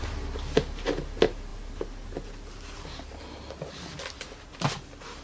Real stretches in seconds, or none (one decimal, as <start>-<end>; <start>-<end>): 0.0-5.2